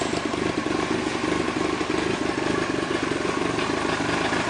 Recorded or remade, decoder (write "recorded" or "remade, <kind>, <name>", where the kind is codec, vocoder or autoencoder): recorded